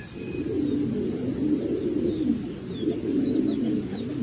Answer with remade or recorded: recorded